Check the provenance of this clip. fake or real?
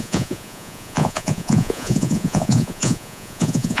fake